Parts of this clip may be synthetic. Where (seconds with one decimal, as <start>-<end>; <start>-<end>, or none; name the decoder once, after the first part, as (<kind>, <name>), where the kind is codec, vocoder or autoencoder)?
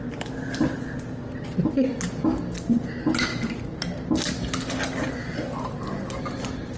none